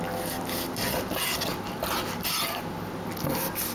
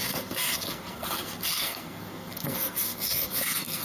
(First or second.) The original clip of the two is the first